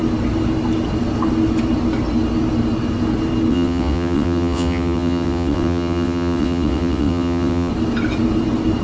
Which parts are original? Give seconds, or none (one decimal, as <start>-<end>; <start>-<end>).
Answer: 0.0-3.5; 7.7-8.8